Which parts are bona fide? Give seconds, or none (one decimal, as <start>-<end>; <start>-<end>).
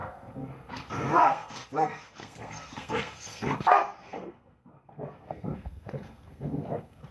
none